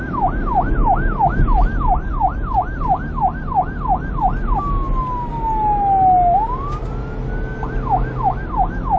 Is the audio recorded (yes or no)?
yes